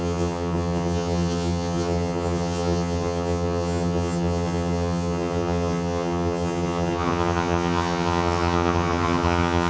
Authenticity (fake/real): fake